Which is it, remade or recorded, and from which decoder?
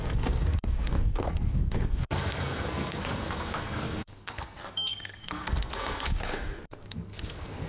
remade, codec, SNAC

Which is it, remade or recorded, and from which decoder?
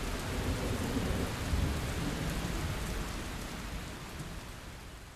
recorded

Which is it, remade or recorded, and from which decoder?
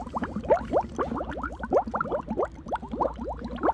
recorded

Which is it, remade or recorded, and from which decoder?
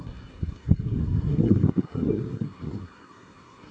remade, codec, SNAC